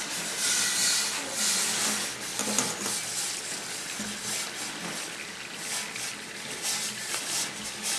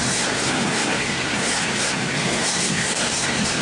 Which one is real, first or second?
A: first